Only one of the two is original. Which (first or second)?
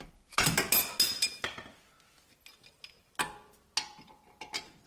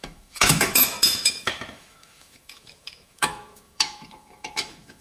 first